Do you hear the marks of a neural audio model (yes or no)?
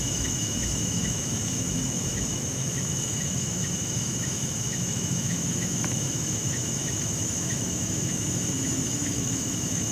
yes